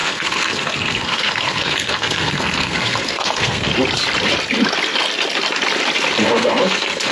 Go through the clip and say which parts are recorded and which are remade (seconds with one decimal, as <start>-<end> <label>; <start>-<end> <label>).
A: 0.0-3.7 remade; 3.7-6.2 recorded; 6.2-7.1 remade